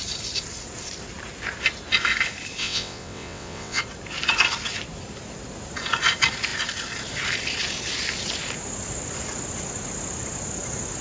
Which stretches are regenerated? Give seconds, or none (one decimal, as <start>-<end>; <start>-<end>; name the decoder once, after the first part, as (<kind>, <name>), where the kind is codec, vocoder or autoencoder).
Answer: 2.6-3.8 (vocoder, WaveNeXt)